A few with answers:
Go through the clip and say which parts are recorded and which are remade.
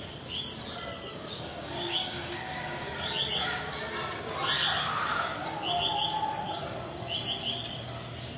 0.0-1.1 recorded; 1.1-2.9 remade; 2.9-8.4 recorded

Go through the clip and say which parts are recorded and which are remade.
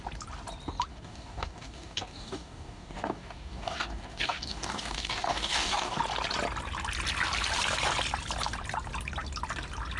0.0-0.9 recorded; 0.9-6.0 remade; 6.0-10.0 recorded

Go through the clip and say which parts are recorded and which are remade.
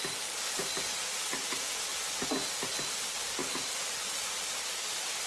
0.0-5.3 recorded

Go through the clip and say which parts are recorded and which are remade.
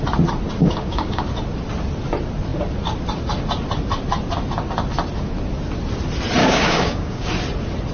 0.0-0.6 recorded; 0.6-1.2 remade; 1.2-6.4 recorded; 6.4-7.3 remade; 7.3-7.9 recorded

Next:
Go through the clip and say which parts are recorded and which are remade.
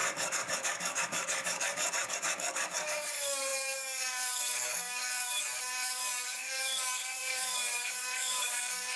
0.0-9.0 remade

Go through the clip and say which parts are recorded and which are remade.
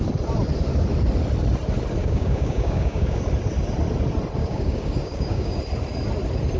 0.0-2.0 recorded; 2.0-3.2 remade; 3.2-4.4 recorded; 4.4-5.6 remade; 5.6-6.6 recorded